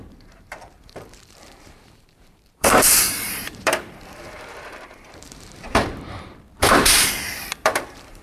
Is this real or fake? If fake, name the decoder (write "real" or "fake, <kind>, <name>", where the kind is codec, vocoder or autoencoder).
fake, vocoder, BigVGAN v2